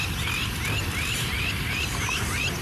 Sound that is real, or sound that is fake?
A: real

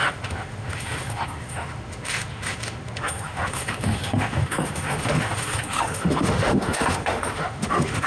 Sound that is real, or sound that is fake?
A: fake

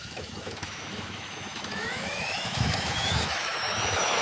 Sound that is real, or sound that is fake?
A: fake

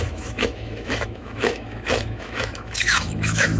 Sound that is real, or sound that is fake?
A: fake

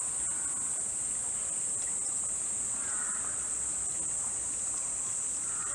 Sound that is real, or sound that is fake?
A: real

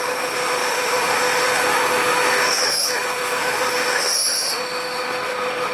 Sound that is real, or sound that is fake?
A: fake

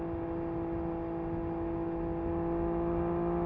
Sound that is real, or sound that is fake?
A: real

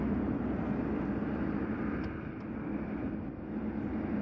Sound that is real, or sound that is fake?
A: real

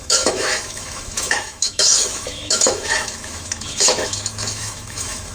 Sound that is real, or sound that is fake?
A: fake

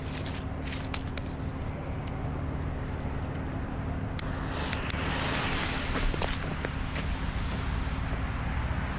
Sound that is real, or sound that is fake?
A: real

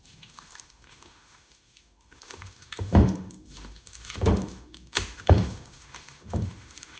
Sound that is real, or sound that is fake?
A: fake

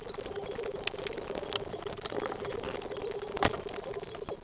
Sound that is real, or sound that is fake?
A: real